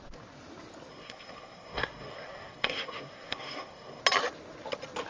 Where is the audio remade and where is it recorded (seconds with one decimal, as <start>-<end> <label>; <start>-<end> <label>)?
0.0-0.9 recorded; 0.9-4.0 remade; 4.0-5.1 recorded